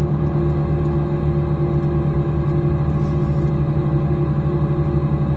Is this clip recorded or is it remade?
recorded